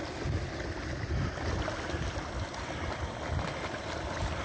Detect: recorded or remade recorded